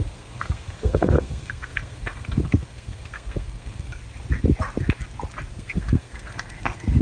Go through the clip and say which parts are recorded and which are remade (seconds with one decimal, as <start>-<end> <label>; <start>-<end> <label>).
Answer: 0.0-4.0 remade; 4.0-5.5 recorded; 5.5-7.0 remade